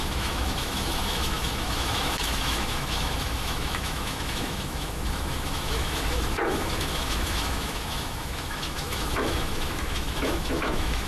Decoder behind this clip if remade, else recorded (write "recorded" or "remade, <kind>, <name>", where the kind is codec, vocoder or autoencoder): remade, autoencoder, DAC-VAE